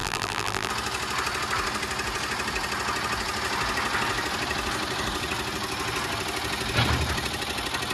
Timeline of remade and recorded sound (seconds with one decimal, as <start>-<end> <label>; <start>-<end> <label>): 0.0-0.7 remade; 0.7-7.9 recorded